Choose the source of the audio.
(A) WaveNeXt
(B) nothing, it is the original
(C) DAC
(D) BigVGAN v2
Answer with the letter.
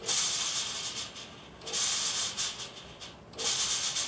B